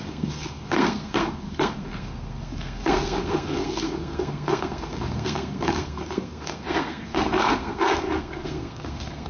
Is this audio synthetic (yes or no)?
yes